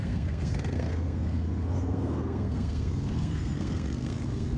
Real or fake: fake